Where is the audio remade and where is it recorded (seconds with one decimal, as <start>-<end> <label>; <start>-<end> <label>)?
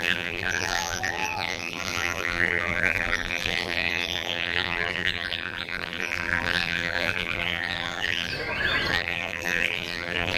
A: 0.0-8.3 remade; 8.3-8.9 recorded; 8.9-10.4 remade